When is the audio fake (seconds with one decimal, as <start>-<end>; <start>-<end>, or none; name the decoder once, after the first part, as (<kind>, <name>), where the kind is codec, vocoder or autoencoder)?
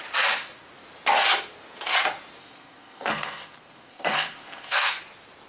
2.4-5.0 (codec, SNAC)